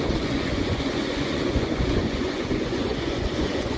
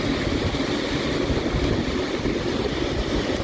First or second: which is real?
second